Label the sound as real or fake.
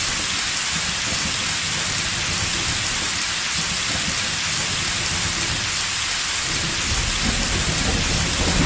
real